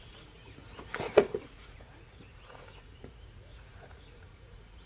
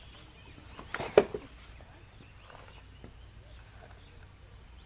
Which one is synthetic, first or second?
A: first